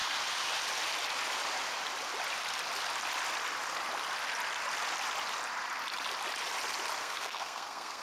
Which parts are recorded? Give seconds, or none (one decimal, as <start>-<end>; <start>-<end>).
0.0-7.0